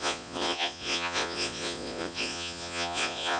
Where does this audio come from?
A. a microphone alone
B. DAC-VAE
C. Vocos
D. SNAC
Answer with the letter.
C